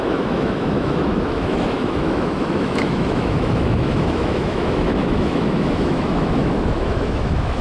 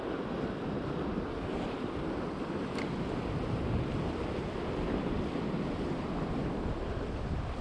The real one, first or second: second